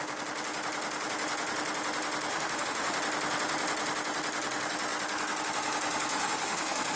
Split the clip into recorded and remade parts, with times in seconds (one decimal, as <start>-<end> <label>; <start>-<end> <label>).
0.0-2.3 recorded; 2.3-3.0 remade; 3.0-6.1 recorded; 6.1-7.0 remade